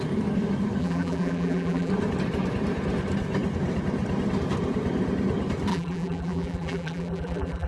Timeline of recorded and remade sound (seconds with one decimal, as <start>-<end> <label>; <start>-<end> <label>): 0.0-0.8 recorded; 0.8-1.9 remade; 1.9-5.7 recorded; 5.7-7.7 remade

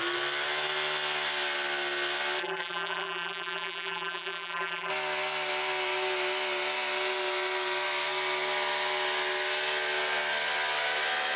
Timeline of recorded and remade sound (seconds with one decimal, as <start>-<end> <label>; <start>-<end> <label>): 0.0-2.4 recorded; 2.4-4.9 remade; 4.9-11.4 recorded

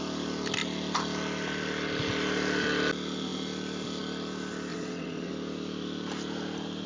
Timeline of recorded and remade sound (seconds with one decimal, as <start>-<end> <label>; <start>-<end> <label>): 0.0-4.7 recorded; 4.7-5.3 remade; 5.3-6.9 recorded

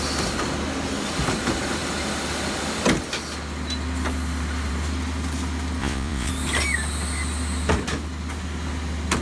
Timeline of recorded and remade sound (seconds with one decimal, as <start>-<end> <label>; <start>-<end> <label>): 0.0-5.8 recorded; 5.8-6.3 remade; 6.3-9.2 recorded

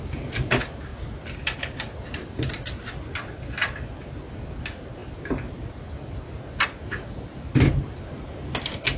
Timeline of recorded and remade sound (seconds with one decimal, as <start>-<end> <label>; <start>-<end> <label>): 0.0-9.0 recorded

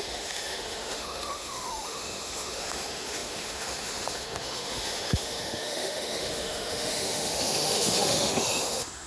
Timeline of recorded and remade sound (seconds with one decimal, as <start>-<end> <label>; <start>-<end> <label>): 0.0-9.1 remade

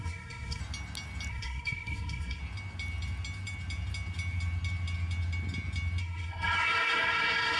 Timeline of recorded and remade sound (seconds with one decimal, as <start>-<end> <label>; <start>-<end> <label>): 0.0-0.6 remade; 0.6-1.3 recorded; 1.3-2.4 remade; 2.4-6.0 recorded; 6.0-7.6 remade

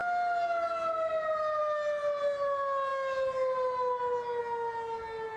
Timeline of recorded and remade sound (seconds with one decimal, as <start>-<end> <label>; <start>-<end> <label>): 0.0-5.4 recorded